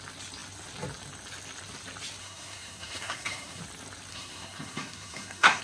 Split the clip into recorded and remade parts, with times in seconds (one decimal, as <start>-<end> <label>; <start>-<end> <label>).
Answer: 0.0-2.2 recorded; 2.2-3.6 remade; 3.6-4.1 recorded; 4.1-5.6 remade